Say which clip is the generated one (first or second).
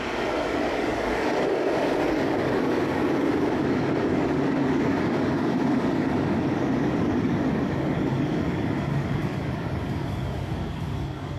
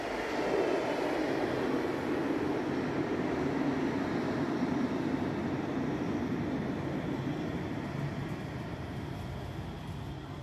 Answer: first